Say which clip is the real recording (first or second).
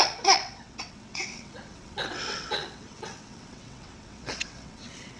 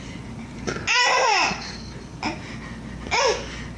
second